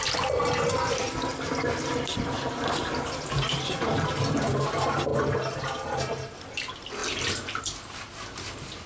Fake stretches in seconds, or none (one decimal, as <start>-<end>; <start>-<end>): 1.3-4.4; 7.0-7.6